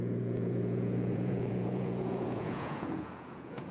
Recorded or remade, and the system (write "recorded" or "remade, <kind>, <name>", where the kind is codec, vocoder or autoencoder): remade, vocoder, Vocos